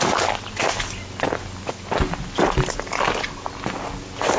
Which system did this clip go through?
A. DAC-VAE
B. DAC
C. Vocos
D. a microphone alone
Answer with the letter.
D